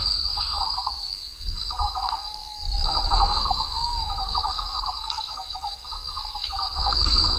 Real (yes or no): no